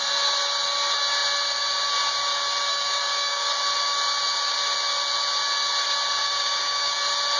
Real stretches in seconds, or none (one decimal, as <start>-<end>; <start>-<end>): 0.0-2.7; 3.5-6.2; 7.0-7.4